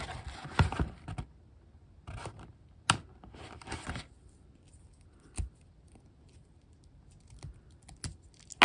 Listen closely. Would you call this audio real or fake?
real